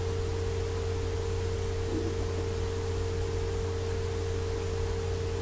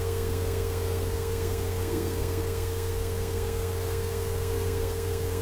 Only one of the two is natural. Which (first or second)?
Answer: first